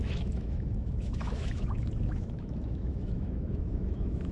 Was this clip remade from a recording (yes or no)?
yes